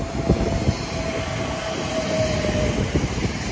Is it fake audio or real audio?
real